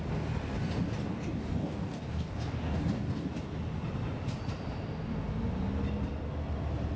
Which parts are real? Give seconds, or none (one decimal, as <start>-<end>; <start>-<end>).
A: 0.0-1.1; 3.3-7.0